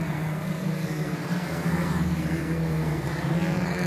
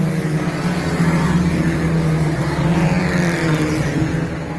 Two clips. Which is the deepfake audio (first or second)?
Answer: first